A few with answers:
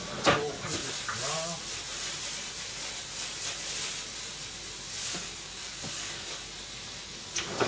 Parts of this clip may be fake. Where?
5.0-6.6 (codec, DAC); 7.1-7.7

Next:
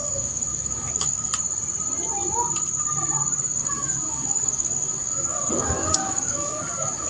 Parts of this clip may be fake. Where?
0.0-1.3 (codec, DAC); 3.6-7.1

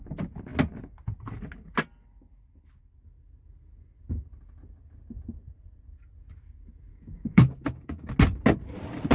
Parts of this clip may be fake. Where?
6.9-8.1 (codec, DAC)

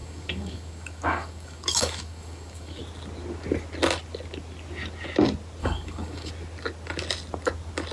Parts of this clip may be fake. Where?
0.0-2.8 (codec, DAC); 5.6-6.3